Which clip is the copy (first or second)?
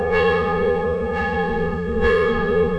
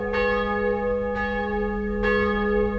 first